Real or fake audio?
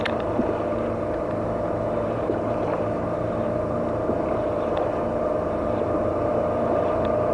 fake